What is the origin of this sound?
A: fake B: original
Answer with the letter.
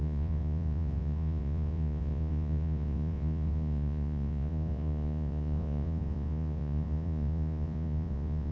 A